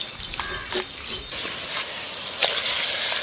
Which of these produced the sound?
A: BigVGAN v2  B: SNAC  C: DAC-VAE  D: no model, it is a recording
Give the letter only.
D